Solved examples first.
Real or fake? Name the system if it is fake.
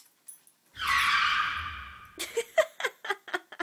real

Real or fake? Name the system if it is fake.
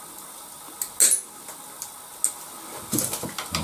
real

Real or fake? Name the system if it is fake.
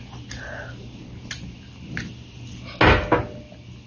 real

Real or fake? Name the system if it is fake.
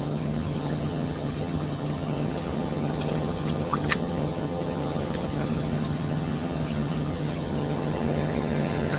fake, vocoder, HiFi-GAN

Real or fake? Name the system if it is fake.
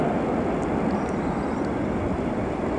real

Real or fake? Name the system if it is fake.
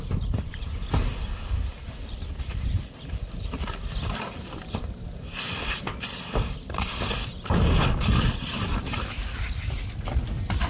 real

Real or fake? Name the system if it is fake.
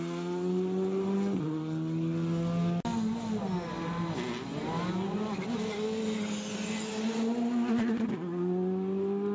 real